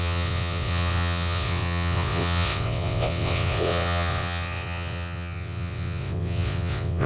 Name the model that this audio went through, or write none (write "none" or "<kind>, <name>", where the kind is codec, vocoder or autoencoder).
vocoder, WaveNeXt